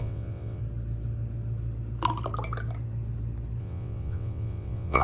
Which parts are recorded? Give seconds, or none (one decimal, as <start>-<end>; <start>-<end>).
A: 0.6-3.6